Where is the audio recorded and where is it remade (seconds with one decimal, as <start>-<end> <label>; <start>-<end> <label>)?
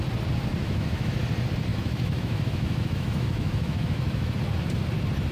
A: 0.0-0.6 recorded; 0.6-1.2 remade; 1.2-1.7 recorded; 1.7-4.3 remade; 4.3-5.3 recorded